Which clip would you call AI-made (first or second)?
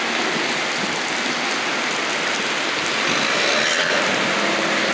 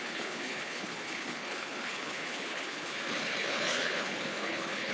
second